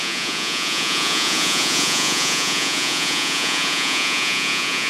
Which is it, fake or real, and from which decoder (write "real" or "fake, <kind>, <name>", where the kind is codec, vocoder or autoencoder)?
fake, vocoder, Vocos